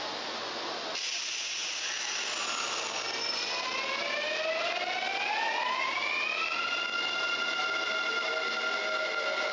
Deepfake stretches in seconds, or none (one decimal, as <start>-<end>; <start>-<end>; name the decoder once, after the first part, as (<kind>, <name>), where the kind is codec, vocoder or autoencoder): none